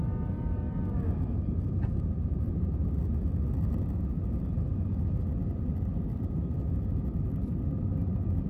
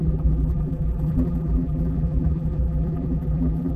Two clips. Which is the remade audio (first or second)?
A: second